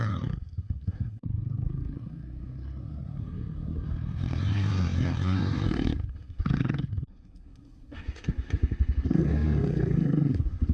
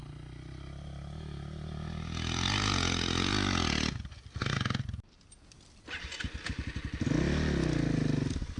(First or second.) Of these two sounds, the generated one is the first